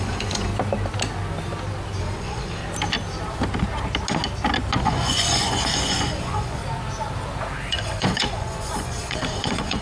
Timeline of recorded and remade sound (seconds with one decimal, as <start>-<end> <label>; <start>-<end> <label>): 0.0-0.5 remade; 0.5-2.0 recorded; 2.0-2.6 remade; 2.6-4.8 recorded; 4.8-6.6 remade; 6.6-7.7 recorded; 7.7-9.8 remade